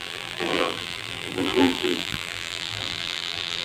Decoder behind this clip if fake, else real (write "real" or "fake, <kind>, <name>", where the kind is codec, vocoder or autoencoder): fake, vocoder, BigVGAN v2